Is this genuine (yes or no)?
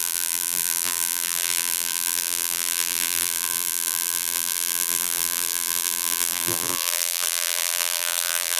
no